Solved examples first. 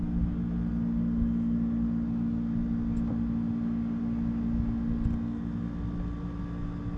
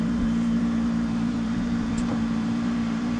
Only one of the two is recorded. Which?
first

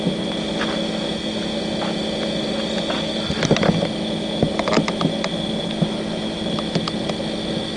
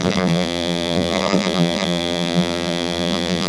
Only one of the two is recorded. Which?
first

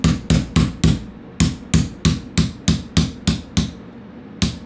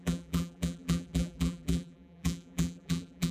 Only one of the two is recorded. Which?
first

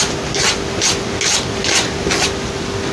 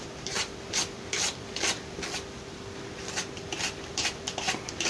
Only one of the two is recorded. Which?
first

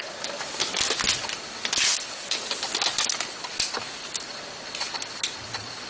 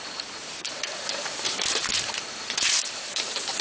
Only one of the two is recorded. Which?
first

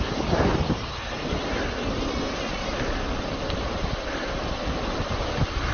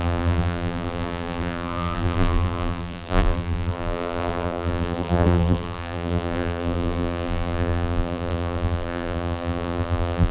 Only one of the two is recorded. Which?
first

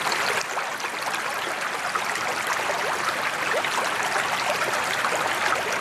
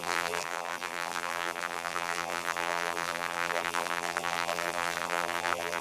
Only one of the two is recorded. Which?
first